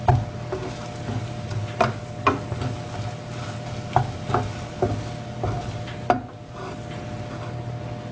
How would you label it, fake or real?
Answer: real